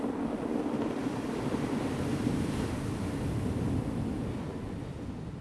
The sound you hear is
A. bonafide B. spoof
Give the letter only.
A